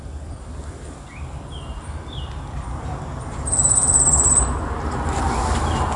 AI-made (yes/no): no